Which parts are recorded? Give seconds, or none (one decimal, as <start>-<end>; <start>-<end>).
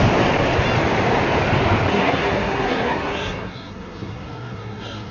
0.0-1.9